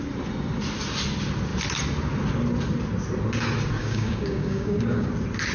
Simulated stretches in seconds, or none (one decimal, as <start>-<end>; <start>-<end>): 3.8-5.1